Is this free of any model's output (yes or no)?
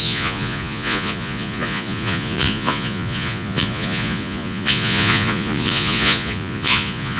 no